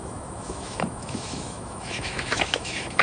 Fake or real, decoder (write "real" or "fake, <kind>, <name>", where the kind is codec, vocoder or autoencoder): fake, autoencoder, DAC-VAE